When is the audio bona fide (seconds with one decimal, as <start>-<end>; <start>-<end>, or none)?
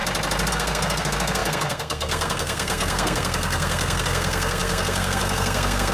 0.0-0.5